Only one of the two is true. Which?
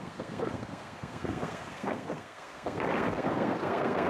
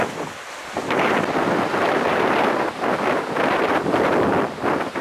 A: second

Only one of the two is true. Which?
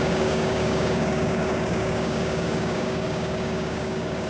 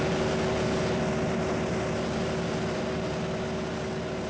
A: second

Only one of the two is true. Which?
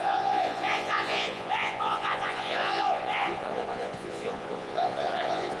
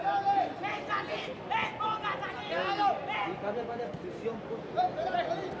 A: second